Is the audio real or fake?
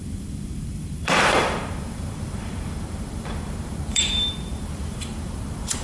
fake